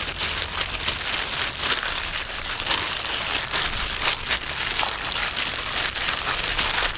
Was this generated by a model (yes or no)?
no